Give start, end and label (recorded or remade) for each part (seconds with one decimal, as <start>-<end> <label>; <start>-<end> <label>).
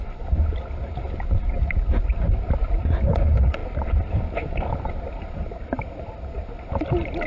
0.0-7.3 recorded